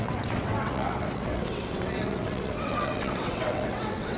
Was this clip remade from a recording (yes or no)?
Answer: yes